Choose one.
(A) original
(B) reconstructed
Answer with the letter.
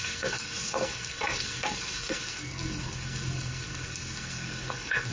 B